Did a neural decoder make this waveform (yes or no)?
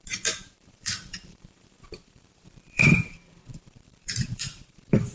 yes